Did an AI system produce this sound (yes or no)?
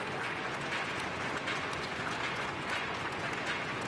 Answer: yes